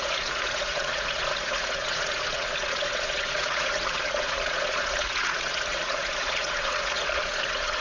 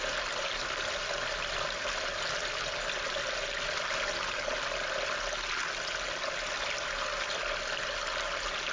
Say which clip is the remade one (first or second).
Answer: first